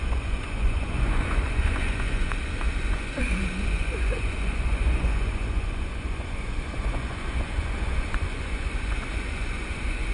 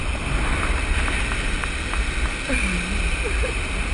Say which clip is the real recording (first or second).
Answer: second